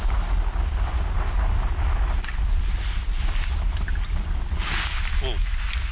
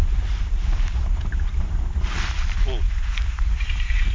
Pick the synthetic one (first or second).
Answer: second